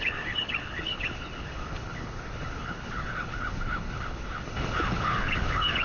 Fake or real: fake